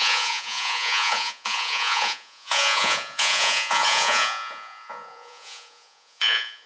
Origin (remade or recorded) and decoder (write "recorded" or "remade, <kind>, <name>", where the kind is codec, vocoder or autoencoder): remade, vocoder, Vocos